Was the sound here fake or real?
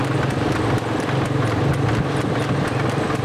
real